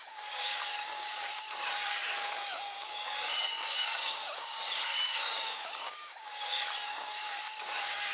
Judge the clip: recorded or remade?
remade